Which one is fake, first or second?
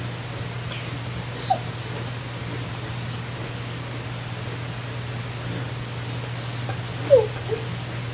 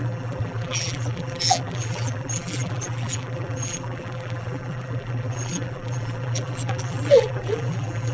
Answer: second